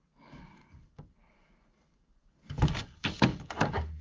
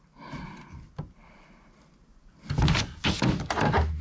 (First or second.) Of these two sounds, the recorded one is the second